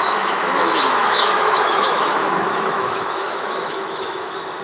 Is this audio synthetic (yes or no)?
yes